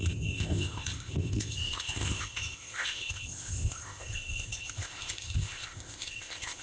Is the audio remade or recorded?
remade